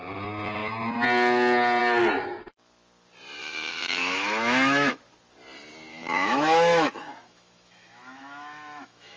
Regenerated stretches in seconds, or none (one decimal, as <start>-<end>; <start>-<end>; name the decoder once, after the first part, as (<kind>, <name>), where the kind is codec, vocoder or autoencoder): 3.4-5.0 (autoencoder, DAC-VAE); 5.9-9.2